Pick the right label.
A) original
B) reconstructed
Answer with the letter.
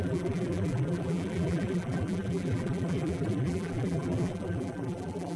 B